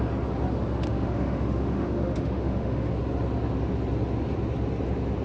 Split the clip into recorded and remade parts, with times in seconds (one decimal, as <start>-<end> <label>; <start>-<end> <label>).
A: 0.0-0.9 recorded; 0.9-2.9 remade; 2.9-5.2 recorded